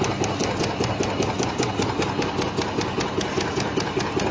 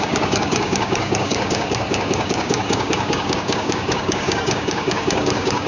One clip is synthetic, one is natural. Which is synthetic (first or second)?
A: second